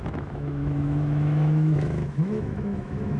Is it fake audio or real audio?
fake